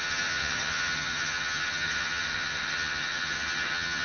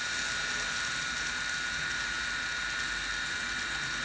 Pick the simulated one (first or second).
first